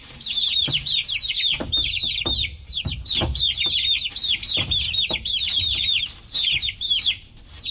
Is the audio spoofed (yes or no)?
yes